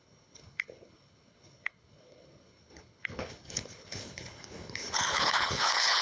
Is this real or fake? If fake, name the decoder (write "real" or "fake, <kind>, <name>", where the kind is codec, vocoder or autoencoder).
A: fake, codec, HILCodec